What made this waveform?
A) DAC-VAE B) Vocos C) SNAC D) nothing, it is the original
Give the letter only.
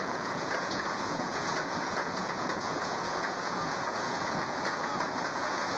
B